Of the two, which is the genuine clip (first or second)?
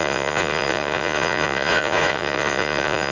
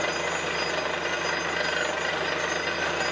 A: second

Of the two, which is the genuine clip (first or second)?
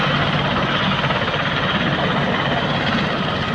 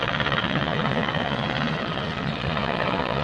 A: first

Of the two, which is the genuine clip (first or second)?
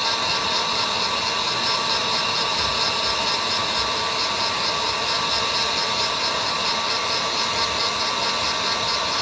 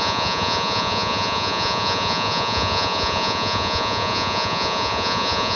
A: first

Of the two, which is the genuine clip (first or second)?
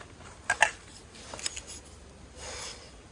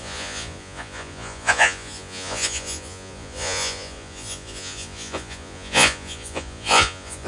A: first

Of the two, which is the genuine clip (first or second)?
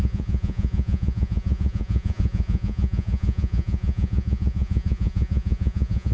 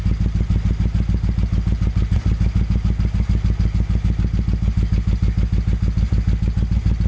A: second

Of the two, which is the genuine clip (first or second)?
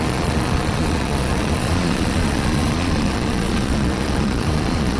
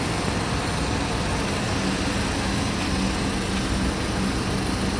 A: second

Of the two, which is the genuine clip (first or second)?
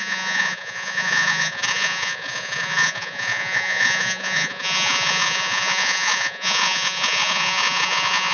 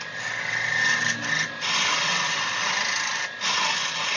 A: second